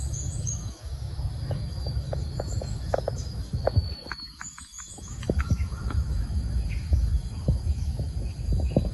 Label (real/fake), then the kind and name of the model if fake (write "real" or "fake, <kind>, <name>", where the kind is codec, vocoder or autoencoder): fake, autoencoder, DAC-VAE